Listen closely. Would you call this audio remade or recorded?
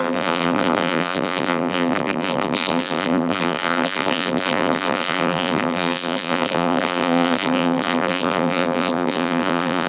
remade